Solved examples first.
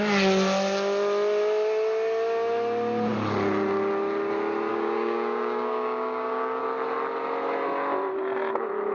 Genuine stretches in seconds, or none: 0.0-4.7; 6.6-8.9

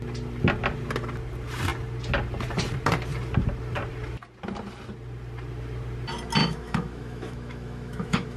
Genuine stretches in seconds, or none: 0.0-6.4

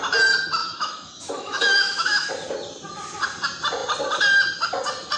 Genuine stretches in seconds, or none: 0.0-0.6; 2.3-5.2

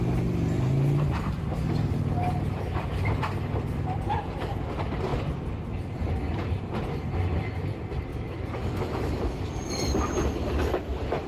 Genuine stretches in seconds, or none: 0.0-8.1; 9.7-11.3

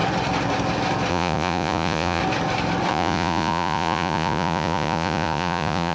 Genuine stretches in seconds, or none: 0.0-1.1; 2.2-2.9

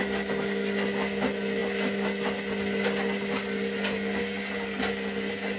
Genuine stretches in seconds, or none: 0.0-5.6

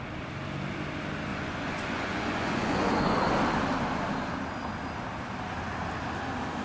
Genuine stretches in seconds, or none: 0.0-1.3; 3.2-6.6